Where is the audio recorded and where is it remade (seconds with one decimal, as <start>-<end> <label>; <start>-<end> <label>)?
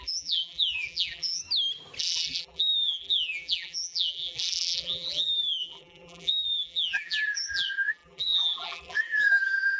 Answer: 0.0-1.4 remade; 1.4-2.0 recorded; 2.0-9.8 remade